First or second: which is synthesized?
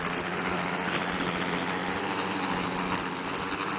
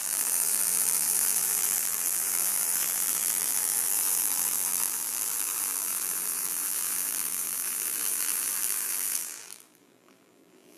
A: second